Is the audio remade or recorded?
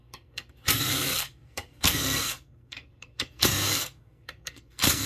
remade